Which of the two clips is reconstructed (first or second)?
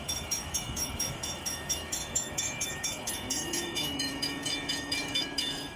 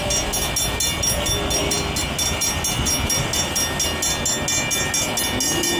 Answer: first